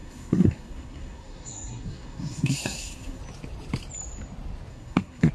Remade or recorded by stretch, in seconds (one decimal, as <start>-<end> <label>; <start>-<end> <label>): 0.0-3.2 remade; 3.2-4.7 recorded; 4.7-5.3 remade